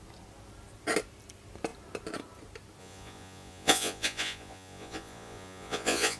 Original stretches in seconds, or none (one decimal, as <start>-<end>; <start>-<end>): 0.0-2.8